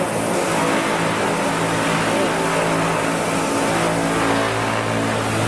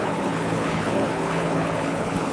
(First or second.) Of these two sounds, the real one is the first